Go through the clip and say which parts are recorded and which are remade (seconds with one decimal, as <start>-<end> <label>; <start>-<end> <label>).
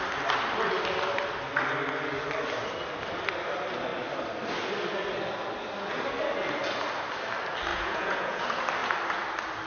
0.0-7.7 recorded; 7.7-8.4 remade; 8.4-9.7 recorded